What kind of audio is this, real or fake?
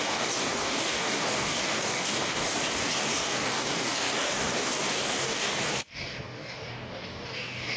fake